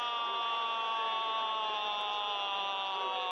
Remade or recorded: recorded